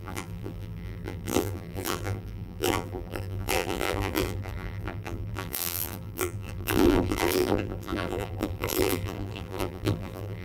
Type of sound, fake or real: fake